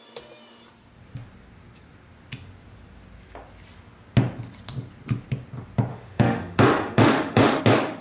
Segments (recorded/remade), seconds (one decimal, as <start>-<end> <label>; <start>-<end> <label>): 0.0-5.9 recorded; 5.9-7.6 remade; 7.6-8.0 recorded